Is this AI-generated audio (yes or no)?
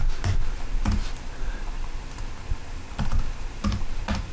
yes